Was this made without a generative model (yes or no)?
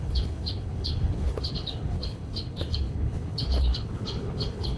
no